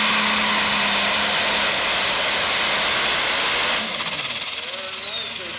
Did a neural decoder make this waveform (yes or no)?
no